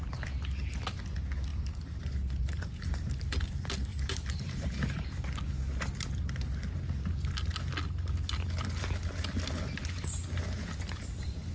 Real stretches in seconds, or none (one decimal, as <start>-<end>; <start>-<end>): 0.0-1.5; 3.2-3.9; 5.1-11.5

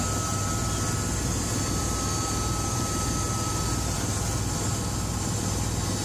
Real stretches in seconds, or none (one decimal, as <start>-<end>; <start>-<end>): 0.0-6.0

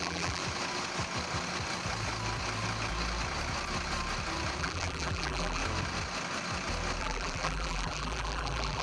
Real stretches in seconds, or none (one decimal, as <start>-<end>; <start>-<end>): 0.4-4.6; 5.6-7.0

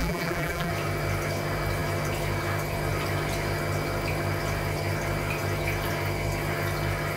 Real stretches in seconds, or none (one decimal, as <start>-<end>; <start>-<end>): 0.7-7.2